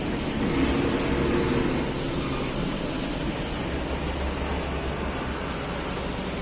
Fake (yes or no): no